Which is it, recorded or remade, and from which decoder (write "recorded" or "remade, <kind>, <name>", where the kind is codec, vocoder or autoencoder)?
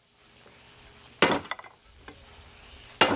recorded